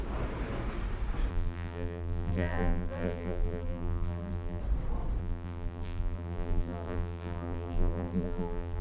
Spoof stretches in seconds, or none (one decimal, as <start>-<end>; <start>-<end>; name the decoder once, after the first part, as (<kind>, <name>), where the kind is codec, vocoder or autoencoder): 1.3-4.6 (vocoder, BigVGAN v2); 5.2-8.8